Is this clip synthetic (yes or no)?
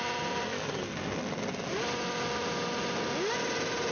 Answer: no